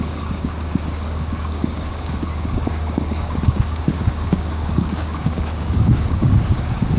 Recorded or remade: remade